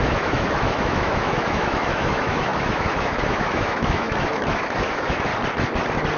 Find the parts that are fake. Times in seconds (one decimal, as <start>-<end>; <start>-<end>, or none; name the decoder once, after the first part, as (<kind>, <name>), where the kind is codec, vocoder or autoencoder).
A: 0.0-5.3 (autoencoder, DAC-VAE)